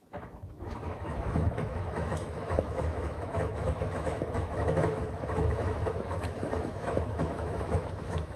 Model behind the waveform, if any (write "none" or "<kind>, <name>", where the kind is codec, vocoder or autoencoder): autoencoder, DAC-VAE